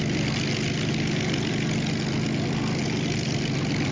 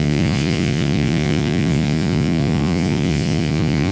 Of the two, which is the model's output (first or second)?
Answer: second